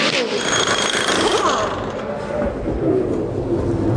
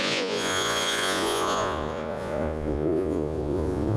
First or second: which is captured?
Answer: first